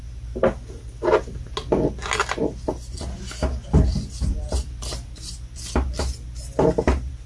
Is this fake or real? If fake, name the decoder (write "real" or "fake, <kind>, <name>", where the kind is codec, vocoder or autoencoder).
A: real